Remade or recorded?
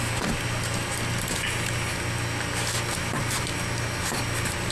recorded